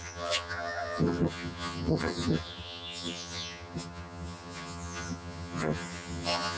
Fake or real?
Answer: fake